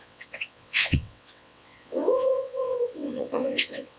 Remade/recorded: remade